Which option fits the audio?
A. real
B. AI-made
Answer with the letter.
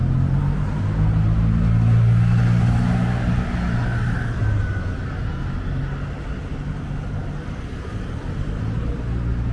A